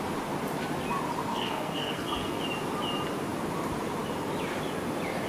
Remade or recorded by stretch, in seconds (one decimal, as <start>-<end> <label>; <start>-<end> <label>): 0.0-1.3 recorded; 1.3-2.4 remade; 2.4-5.3 recorded